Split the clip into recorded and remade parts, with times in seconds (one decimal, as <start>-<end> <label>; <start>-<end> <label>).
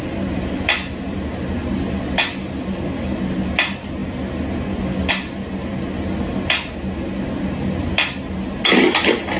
0.0-9.4 recorded